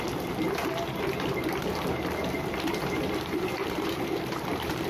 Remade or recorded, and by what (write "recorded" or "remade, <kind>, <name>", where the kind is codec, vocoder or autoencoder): recorded